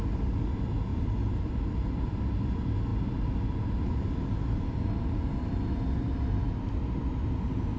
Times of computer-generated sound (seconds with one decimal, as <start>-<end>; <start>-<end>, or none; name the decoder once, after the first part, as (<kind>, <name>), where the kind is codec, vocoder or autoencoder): 0.9-2.0 (vocoder, BigVGAN v2); 2.9-6.4